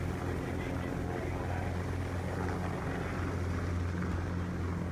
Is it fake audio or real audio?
real